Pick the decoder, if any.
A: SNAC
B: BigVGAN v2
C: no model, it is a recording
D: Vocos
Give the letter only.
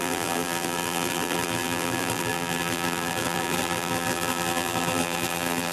B